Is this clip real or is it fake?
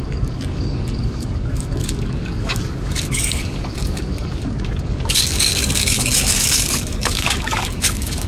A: fake